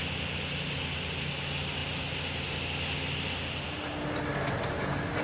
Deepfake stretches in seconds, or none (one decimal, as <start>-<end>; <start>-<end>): none